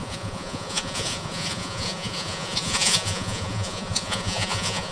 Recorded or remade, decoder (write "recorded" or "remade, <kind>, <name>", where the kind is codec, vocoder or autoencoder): remade, vocoder, Vocos